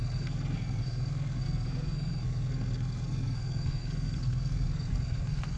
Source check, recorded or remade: remade